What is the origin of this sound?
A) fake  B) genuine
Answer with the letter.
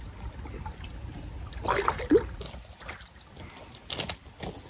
B